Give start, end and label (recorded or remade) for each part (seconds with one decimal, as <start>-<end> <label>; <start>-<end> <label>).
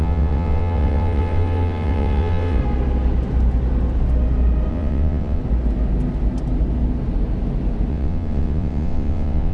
0.0-2.6 remade; 2.6-4.7 recorded; 4.7-5.4 remade; 5.4-7.9 recorded; 7.9-9.5 remade